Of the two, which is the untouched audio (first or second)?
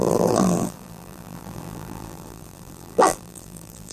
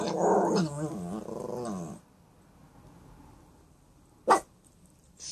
second